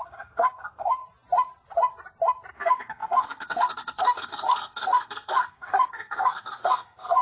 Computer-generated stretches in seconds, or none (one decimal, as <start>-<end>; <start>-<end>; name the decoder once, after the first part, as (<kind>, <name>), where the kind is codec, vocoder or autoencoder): 0.0-1.0 (codec, SNAC); 2.5-7.2